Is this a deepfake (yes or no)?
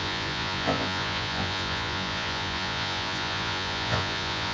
yes